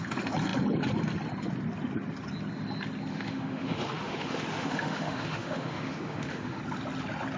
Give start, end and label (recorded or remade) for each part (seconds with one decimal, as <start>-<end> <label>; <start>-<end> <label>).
0.0-3.1 recorded; 3.1-6.6 remade; 6.6-7.4 recorded